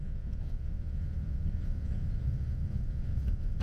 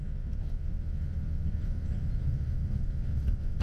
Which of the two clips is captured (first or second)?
second